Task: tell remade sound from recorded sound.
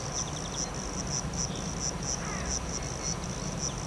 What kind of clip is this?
recorded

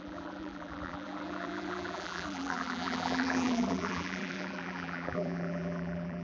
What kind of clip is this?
remade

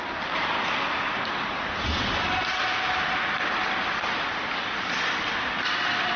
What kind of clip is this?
remade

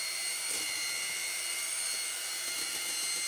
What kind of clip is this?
remade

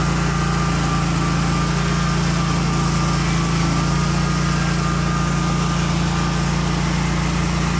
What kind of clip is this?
recorded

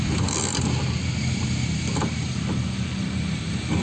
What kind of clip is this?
remade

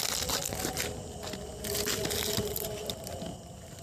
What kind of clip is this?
recorded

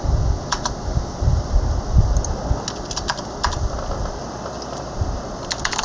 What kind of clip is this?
recorded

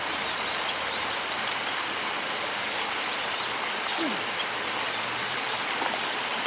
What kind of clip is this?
remade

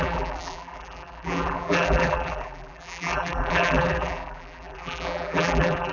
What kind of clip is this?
remade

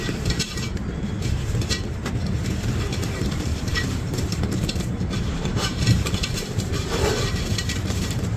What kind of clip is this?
remade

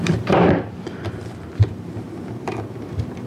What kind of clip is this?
remade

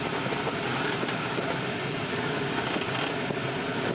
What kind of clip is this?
remade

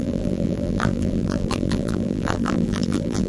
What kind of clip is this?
remade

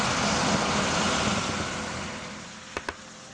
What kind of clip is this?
recorded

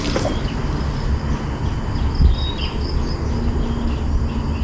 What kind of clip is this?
recorded